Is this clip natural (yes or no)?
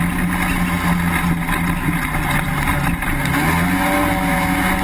yes